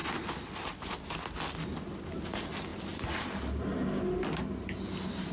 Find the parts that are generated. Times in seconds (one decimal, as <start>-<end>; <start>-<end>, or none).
none

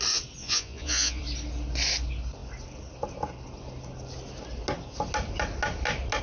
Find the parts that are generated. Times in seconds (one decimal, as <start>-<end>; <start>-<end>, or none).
0.4-1.2

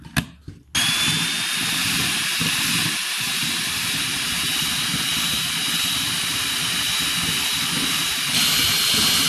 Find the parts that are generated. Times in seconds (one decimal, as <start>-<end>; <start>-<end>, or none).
none

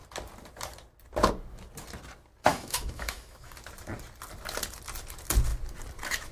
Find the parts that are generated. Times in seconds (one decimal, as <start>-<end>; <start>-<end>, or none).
2.5-3.5